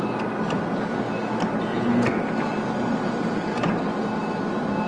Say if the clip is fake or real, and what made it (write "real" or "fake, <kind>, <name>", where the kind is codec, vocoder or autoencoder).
real